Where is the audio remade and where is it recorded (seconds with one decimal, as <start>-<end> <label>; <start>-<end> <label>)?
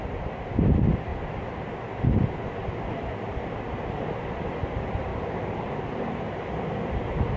0.0-7.4 recorded